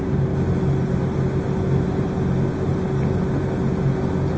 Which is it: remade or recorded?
recorded